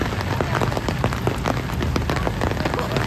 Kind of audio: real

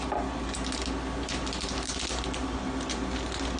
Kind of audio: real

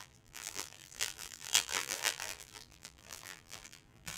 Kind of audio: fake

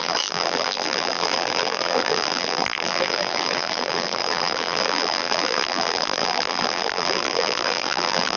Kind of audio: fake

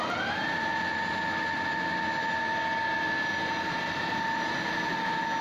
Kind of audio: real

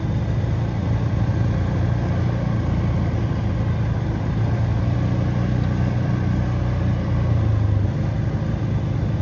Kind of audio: real